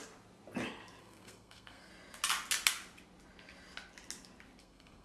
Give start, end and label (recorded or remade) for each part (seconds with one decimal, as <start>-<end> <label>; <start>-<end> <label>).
0.0-1.0 recorded; 1.0-1.9 remade; 1.9-4.6 recorded; 4.6-5.0 remade